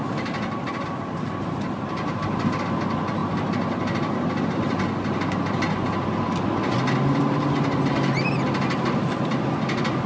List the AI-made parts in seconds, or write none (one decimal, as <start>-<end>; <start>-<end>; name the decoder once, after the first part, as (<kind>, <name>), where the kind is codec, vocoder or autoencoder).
none